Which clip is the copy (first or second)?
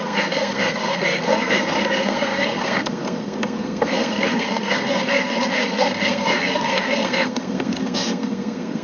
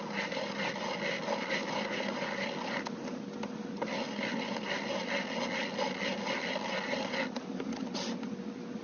first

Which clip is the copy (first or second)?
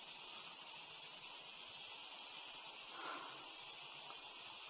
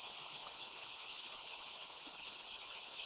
second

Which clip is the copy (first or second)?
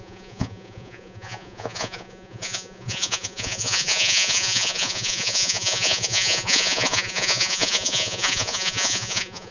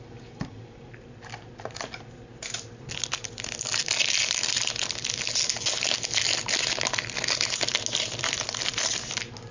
first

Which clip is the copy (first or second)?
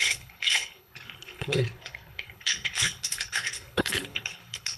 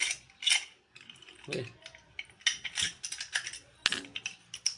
first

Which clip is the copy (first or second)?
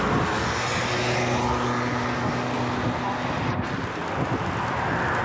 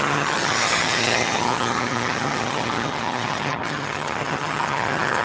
second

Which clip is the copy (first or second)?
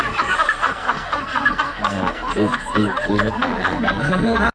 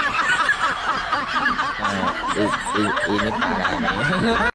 first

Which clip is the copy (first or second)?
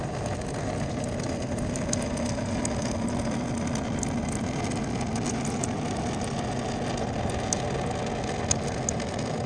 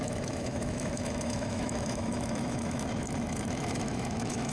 second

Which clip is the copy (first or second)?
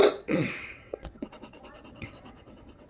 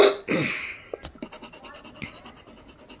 first